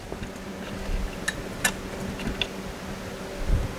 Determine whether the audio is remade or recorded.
recorded